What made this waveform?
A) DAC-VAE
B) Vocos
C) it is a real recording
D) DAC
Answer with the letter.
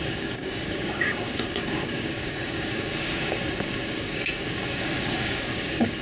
D